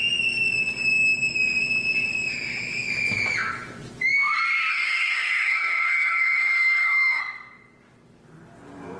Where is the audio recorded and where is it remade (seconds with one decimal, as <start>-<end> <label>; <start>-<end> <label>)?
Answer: 0.0-4.7 recorded; 4.7-7.2 remade; 7.2-9.0 recorded